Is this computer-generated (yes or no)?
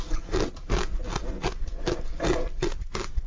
no